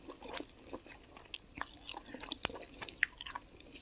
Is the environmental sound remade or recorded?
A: recorded